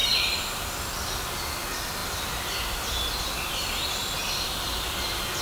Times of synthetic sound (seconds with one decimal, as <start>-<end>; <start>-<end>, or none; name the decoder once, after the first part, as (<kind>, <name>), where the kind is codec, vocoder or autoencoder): 0.0-1.2 (vocoder, BigVGAN v2)